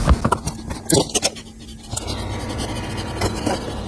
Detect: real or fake real